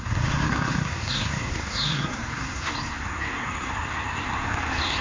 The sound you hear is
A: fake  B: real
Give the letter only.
A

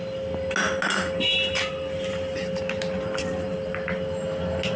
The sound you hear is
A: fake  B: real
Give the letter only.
B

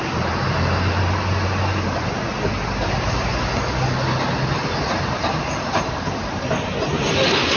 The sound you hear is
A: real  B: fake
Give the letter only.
A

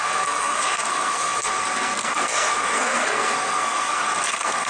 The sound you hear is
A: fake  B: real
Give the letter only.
A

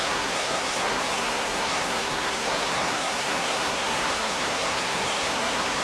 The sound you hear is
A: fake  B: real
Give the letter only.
A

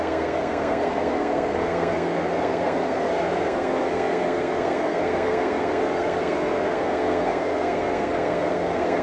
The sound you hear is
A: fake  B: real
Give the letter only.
A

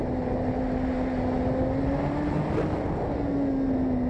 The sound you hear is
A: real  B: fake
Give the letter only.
A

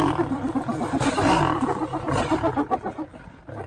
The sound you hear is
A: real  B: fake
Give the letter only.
A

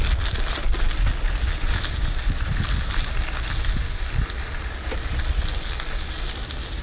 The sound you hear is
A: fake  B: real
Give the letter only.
B